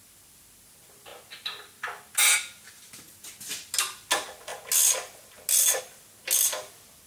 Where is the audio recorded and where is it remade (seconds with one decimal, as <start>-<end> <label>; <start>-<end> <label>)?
0.0-7.1 recorded

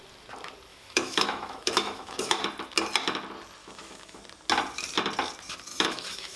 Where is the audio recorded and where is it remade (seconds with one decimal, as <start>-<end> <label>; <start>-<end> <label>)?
0.0-0.7 recorded; 0.7-2.4 remade; 2.4-3.6 recorded; 3.6-4.2 remade; 4.2-5.7 recorded; 5.7-6.4 remade

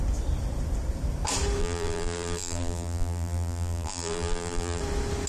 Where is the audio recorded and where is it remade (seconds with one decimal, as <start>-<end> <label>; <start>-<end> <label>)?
0.0-1.6 recorded; 1.6-4.8 remade; 4.8-5.3 recorded